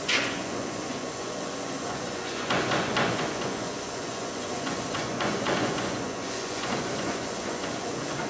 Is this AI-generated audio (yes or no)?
yes